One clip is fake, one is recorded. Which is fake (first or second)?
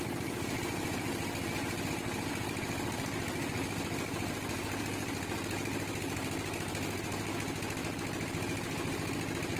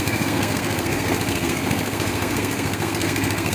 second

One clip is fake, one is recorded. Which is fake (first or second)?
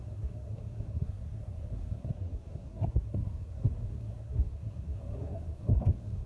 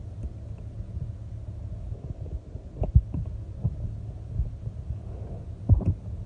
first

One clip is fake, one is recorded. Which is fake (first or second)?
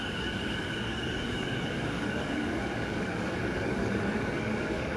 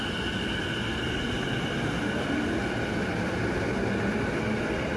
first